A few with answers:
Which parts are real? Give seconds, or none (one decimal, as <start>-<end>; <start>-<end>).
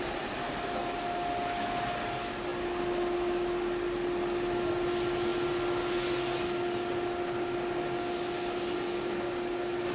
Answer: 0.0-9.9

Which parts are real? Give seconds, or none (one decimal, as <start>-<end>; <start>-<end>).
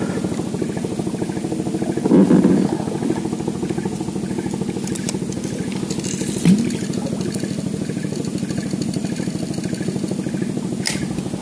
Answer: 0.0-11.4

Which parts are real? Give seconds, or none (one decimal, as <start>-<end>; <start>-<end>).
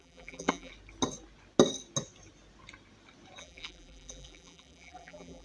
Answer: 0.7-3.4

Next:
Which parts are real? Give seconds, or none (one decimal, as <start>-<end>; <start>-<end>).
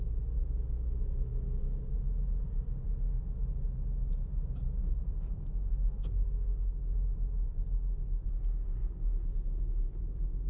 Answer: 0.0-4.8; 6.9-10.5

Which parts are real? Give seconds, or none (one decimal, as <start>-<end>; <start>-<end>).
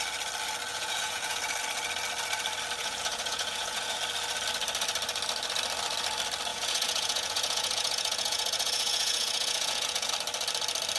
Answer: 0.0-0.7; 1.4-2.8; 4.0-6.5; 10.1-11.0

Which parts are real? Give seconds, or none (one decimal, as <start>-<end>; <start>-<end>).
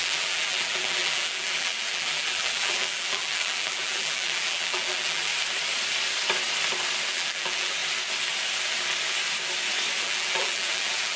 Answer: 5.3-7.1; 7.8-10.0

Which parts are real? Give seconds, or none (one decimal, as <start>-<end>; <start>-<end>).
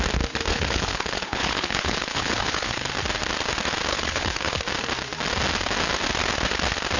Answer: 0.0-0.5; 2.9-3.9; 4.6-7.0